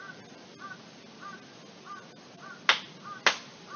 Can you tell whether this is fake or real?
real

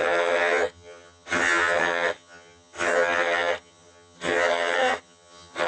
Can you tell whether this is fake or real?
fake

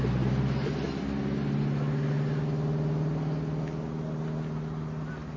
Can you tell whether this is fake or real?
real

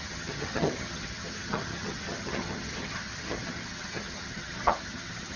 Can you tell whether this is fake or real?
fake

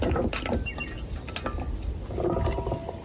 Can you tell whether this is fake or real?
real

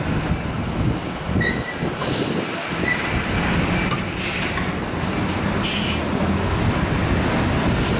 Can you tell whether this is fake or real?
real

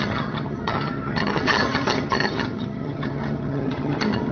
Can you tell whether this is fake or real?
fake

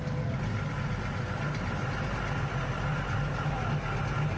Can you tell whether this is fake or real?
real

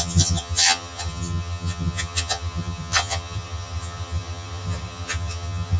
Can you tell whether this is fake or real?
fake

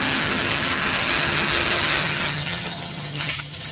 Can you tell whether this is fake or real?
fake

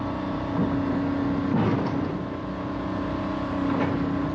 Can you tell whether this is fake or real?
real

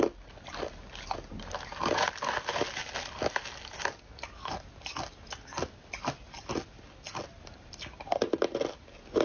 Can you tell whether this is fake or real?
real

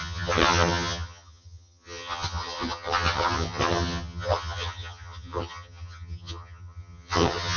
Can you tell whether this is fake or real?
fake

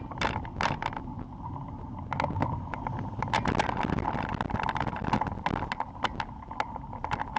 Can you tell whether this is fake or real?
real